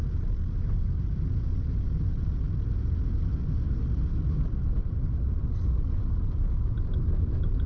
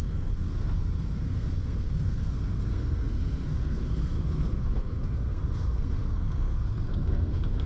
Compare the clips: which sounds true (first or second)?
first